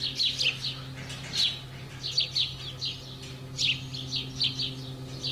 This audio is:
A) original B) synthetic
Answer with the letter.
A